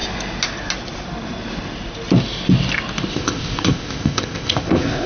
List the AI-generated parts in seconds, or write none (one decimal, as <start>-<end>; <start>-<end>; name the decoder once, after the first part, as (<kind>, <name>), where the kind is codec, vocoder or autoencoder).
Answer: 3.1-5.1 (codec, ZipCodec)